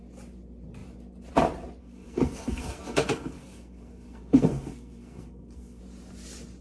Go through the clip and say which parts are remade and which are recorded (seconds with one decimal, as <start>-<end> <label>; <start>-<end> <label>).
0.0-1.8 recorded; 1.8-5.8 remade; 5.8-6.6 recorded